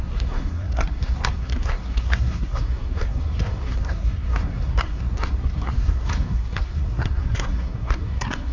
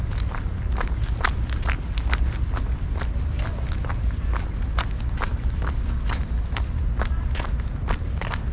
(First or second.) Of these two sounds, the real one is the second